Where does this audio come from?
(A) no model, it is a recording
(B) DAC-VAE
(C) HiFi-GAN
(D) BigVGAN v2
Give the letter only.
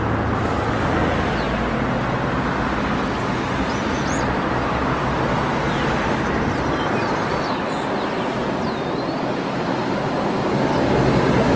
A